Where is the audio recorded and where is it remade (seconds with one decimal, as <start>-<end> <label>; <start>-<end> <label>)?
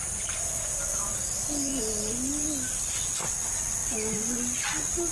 0.0-5.1 recorded